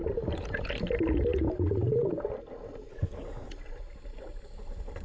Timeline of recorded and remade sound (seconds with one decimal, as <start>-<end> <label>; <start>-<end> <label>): 0.0-2.9 recorded; 2.9-3.5 remade; 3.5-5.0 recorded